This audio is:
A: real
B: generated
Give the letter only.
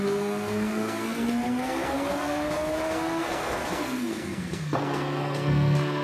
B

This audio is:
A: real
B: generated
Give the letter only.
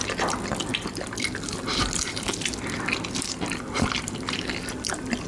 A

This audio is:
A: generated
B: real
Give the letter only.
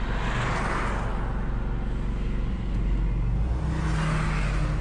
B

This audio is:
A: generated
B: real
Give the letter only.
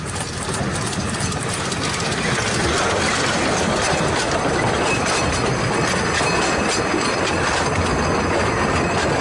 B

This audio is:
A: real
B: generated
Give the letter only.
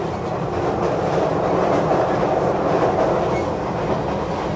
A